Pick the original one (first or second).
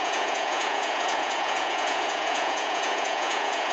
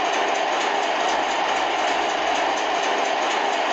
second